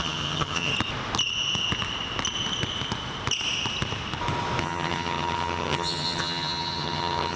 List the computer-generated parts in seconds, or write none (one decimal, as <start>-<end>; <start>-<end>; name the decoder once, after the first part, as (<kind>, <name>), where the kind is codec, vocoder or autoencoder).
0.0-0.7 (vocoder, HiFi-GAN); 4.6-7.4